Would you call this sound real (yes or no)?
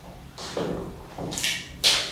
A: yes